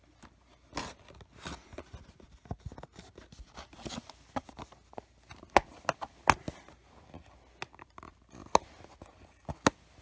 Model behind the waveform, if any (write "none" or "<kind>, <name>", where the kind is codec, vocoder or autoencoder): none